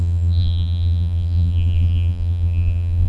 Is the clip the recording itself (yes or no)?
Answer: no